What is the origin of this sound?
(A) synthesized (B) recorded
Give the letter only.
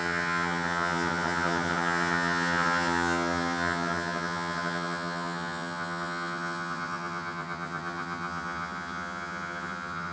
A